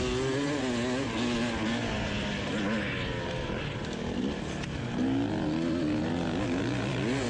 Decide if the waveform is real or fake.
real